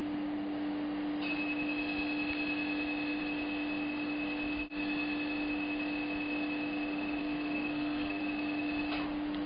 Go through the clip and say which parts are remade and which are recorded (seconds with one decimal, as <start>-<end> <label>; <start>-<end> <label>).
0.0-7.2 recorded; 7.2-8.2 remade; 8.2-9.5 recorded